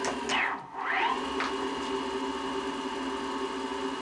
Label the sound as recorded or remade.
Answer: recorded